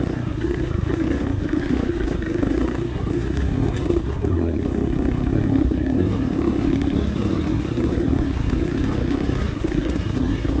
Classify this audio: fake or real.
fake